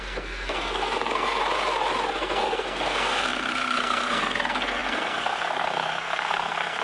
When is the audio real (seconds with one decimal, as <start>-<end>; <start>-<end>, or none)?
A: 1.4-2.2